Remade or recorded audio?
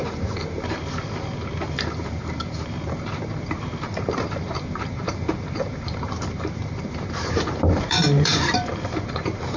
remade